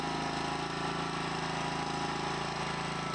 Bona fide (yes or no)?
yes